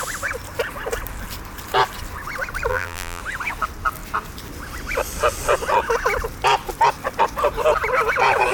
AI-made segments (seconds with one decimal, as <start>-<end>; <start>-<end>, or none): 2.7-3.2